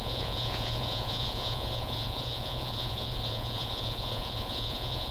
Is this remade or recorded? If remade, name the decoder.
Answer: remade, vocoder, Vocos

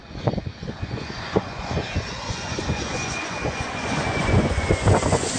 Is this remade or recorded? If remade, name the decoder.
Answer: remade, vocoder, Vocos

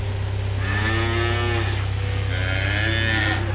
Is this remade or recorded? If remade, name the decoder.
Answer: recorded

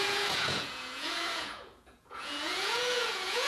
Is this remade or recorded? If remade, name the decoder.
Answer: remade, vocoder, Vocos